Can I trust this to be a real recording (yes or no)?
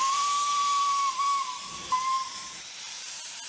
no